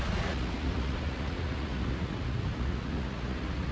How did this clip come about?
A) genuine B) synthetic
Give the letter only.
B